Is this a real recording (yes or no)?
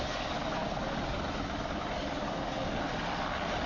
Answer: yes